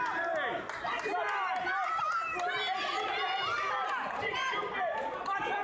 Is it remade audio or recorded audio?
remade